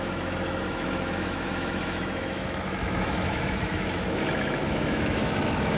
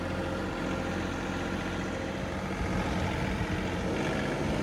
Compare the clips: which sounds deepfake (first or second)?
first